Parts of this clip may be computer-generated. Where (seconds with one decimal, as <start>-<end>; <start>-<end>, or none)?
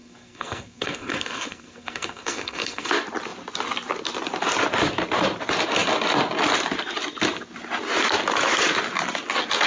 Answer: 0.0-2.9